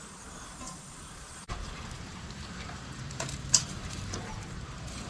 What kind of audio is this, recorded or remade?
remade